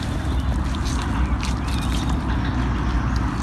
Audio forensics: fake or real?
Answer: real